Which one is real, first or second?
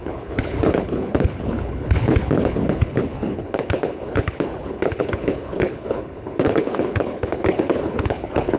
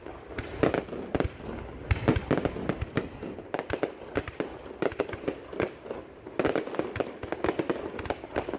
second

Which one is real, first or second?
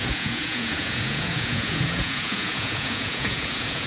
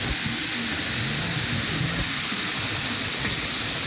second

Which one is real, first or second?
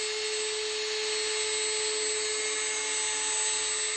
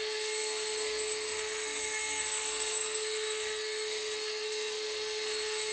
first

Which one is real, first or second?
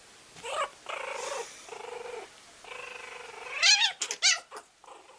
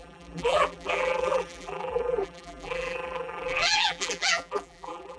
first